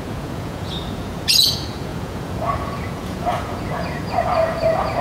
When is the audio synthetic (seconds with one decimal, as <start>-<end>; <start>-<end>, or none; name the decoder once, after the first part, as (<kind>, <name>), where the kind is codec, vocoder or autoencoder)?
0.0-5.0 (vocoder, Vocos)